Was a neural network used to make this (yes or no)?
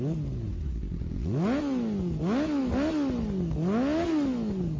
no